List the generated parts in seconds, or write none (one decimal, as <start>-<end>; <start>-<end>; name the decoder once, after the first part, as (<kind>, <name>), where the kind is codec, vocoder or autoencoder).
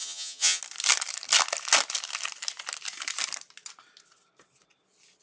0.0-0.6 (vocoder, HiFi-GAN)